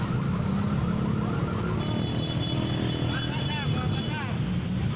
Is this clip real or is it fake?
real